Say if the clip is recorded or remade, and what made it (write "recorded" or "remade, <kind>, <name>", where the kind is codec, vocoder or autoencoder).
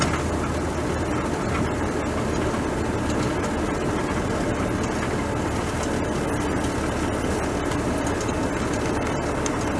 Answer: recorded